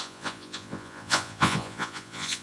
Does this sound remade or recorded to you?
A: remade